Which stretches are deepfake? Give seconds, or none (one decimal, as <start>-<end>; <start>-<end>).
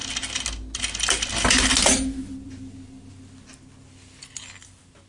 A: none